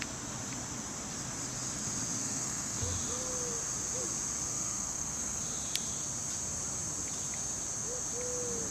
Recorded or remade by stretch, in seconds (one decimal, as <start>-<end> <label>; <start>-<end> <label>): 0.0-2.2 recorded; 2.2-2.8 remade; 2.8-4.5 recorded; 4.5-5.4 remade; 5.4-8.7 recorded